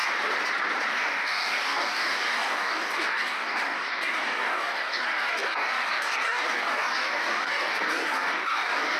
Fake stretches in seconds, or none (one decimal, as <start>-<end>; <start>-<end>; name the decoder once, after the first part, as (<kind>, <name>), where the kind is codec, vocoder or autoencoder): 0.9-9.0 (codec, DAC)